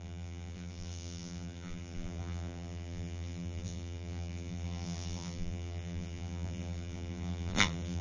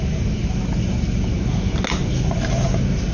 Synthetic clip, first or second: first